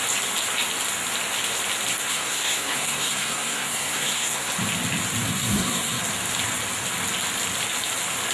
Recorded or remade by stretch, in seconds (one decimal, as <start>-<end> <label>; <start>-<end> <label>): 0.0-2.0 recorded; 2.0-4.5 remade; 4.5-5.3 recorded; 5.3-6.0 remade; 6.0-8.3 recorded

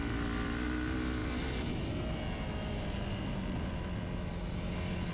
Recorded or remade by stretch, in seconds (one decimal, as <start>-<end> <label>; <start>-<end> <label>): 0.0-5.1 recorded

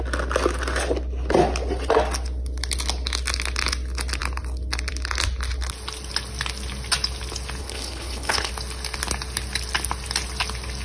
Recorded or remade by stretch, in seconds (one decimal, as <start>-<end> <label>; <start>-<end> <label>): 0.0-7.6 recorded; 7.6-8.5 remade; 8.5-10.8 recorded

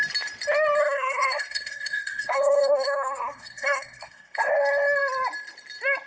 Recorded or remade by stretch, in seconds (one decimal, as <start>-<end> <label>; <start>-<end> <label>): 0.0-0.8 recorded; 0.8-4.5 remade; 4.5-6.1 recorded

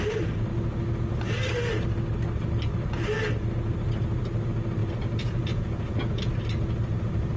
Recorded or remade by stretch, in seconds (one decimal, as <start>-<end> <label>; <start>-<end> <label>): 0.0-4.8 recorded; 4.8-6.3 remade; 6.3-7.4 recorded

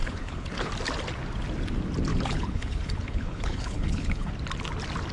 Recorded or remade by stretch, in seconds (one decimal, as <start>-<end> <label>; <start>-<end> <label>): 0.0-0.7 remade; 0.7-2.1 recorded; 2.1-4.3 remade; 4.3-5.1 recorded

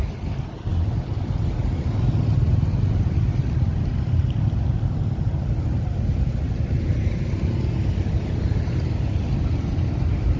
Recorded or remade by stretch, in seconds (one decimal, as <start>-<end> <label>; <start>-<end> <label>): 0.0-10.4 recorded